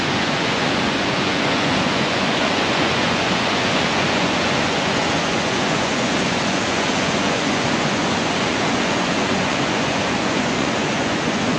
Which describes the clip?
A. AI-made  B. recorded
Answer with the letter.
A